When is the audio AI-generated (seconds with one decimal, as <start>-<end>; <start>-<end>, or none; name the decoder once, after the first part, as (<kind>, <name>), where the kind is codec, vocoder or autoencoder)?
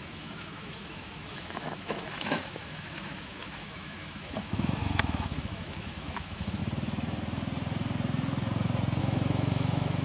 0.0-6.6 (autoencoder, DAC-VAE); 9.0-10.0